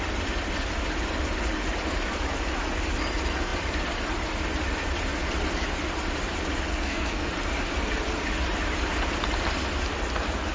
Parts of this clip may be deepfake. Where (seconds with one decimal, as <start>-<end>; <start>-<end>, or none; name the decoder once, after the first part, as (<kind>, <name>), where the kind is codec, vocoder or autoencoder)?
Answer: 6.7-7.3 (codec, SNAC)